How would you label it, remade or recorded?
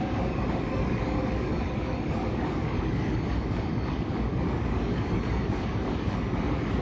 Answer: remade